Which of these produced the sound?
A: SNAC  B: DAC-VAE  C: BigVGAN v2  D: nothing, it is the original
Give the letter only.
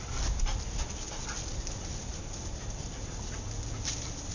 D